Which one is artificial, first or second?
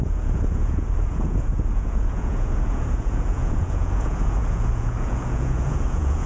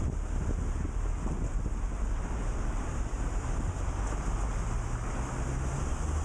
first